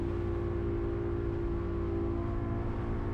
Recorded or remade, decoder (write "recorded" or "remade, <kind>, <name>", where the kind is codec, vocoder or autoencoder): recorded